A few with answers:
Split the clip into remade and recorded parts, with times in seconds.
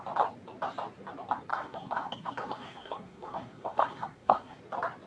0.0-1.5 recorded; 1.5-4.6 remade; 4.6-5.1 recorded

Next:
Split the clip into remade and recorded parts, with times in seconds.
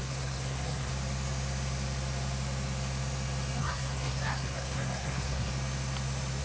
0.0-0.9 remade; 0.9-3.6 recorded; 3.6-5.5 remade; 5.5-6.4 recorded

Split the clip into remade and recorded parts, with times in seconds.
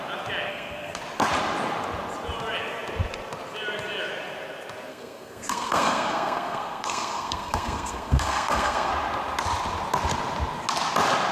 0.0-0.5 recorded; 0.5-1.0 remade; 1.0-4.9 recorded; 4.9-8.9 remade; 8.9-11.3 recorded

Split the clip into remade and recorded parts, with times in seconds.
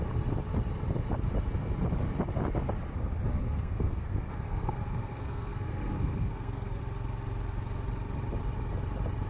0.0-3.3 recorded; 3.3-6.8 remade; 6.8-9.3 recorded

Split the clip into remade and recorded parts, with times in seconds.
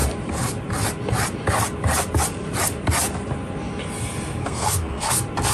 0.0-4.4 recorded; 4.4-5.1 remade; 5.1-5.5 recorded